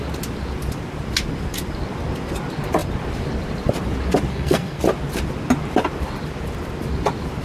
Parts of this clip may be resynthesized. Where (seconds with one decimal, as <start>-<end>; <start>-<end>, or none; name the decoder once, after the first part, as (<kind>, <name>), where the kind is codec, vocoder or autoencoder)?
4.3-4.8 (codec, SNAC)